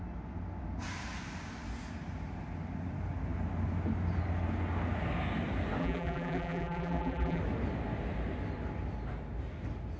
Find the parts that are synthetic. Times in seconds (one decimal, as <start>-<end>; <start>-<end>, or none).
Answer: 5.8-7.4